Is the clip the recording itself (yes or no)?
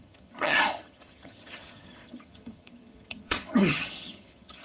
no